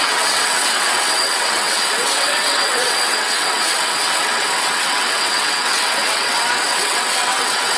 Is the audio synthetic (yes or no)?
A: yes